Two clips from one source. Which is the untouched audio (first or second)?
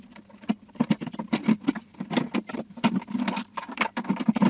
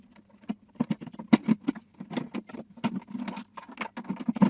second